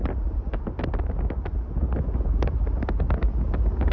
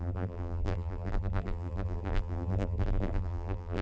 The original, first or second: first